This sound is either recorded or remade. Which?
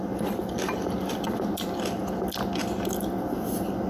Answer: recorded